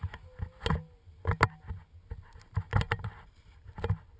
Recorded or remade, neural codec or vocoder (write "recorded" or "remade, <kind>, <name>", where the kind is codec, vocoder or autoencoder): recorded